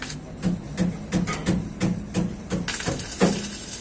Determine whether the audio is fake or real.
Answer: real